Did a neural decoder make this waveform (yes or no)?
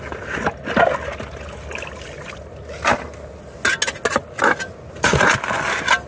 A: no